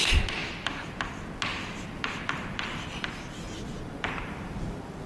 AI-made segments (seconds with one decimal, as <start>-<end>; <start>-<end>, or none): 0.4-1.1; 1.5-4.6

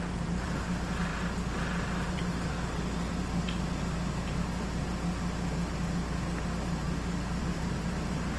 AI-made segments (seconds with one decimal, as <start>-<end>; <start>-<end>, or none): 0.0-1.1; 2.0-2.5; 7.4-8.4

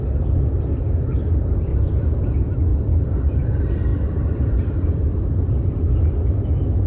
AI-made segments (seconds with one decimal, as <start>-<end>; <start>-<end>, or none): 1.7-2.3; 2.7-3.3; 3.9-5.9

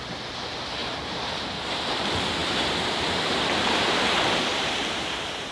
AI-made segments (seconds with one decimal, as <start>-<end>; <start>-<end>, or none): 0.8-1.8; 2.4-3.2; 4.5-5.5

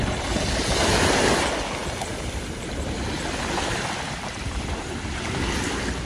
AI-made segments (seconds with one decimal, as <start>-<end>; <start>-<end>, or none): none

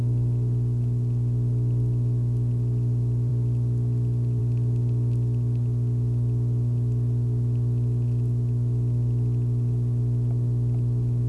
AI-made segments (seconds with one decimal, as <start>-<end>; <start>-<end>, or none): none